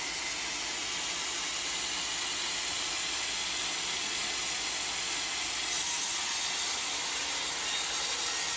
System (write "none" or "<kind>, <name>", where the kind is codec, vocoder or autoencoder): none